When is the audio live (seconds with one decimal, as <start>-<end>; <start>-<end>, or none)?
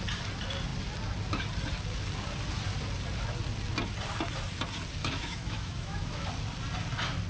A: 0.0-5.0; 6.3-7.3